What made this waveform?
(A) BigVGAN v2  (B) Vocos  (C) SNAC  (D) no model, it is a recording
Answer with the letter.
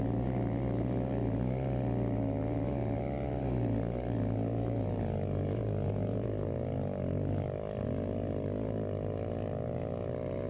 D